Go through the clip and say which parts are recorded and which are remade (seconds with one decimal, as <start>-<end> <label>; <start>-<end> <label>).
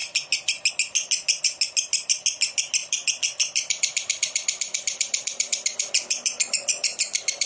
0.0-2.8 recorded; 2.8-7.5 remade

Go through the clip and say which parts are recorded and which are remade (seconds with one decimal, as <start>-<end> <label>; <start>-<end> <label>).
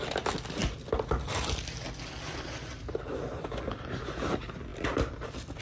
0.0-4.7 recorded; 4.7-5.6 remade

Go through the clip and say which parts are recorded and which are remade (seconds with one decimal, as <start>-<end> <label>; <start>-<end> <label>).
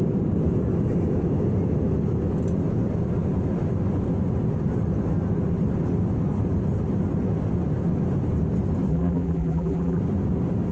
0.0-8.9 recorded; 8.9-10.0 remade; 10.0-10.7 recorded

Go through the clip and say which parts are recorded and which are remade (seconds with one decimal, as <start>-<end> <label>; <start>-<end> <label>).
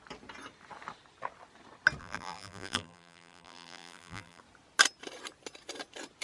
0.0-2.0 recorded; 2.0-4.4 remade; 4.4-6.2 recorded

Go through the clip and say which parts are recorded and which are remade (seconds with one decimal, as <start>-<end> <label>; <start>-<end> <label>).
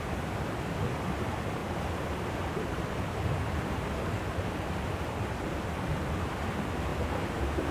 0.0-1.6 recorded; 1.6-6.2 remade; 6.2-6.9 recorded; 6.9-7.7 remade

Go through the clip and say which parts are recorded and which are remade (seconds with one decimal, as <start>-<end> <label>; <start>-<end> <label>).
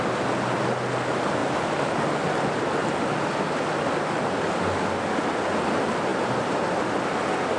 0.0-7.6 recorded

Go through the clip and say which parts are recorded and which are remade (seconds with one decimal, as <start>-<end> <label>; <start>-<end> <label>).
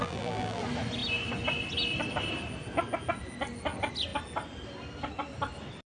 0.0-0.6 remade; 0.6-5.9 recorded